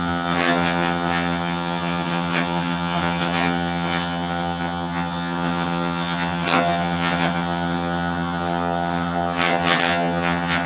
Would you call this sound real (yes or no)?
no